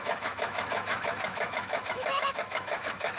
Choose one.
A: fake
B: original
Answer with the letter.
A